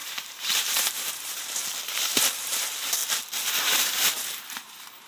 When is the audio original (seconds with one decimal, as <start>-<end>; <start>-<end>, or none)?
1.7-2.4; 3.0-3.6